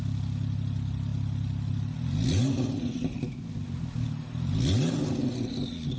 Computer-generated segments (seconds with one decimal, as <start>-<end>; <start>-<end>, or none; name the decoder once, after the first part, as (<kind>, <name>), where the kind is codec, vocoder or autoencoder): none